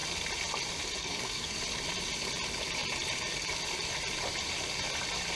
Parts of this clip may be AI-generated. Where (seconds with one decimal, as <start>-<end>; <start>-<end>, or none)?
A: 1.0-1.6